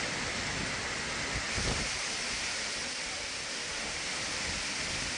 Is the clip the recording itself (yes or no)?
yes